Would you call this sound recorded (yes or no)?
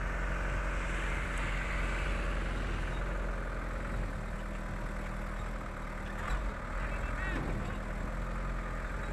yes